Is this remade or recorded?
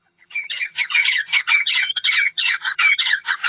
remade